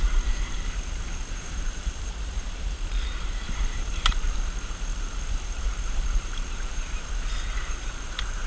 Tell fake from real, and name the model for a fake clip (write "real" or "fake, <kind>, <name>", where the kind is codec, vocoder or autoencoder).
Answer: fake, vocoder, BigVGAN v2